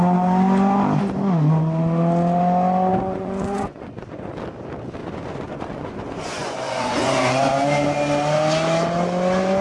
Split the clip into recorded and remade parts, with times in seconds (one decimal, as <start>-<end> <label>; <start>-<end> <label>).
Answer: 0.0-2.9 recorded; 2.9-4.3 remade; 4.3-5.0 recorded; 5.0-7.5 remade; 7.5-9.6 recorded

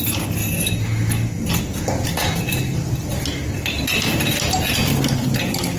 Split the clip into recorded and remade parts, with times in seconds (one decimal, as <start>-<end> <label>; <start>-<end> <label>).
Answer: 0.0-5.8 recorded